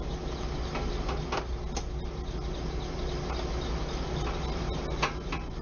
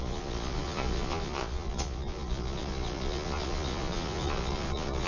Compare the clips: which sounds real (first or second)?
first